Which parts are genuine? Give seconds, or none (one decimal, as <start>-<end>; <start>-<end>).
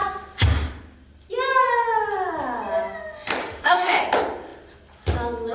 0.0-3.4; 4.0-5.5